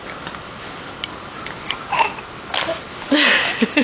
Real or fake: real